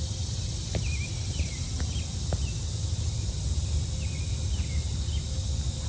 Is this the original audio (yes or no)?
yes